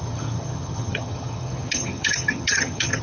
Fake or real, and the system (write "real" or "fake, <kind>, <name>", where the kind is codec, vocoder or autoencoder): fake, vocoder, HiFi-GAN